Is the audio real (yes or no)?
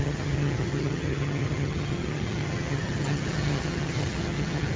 no